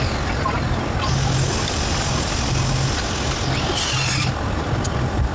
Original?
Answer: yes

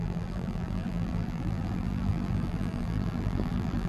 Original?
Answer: no